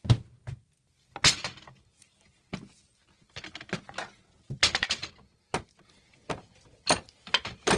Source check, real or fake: real